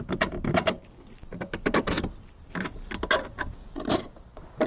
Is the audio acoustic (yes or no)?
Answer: no